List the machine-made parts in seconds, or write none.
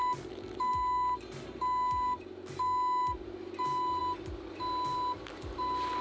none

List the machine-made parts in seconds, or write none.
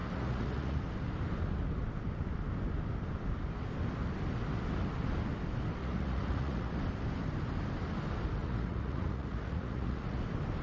0.0-0.8 (vocoder, Vocos); 5.8-6.8; 8.4-10.2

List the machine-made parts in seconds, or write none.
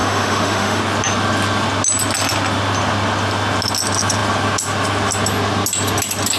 0.0-0.8 (autoencoder, DAC-VAE)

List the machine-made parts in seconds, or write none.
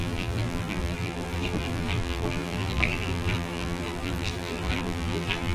0.0-5.5 (vocoder, BigVGAN v2)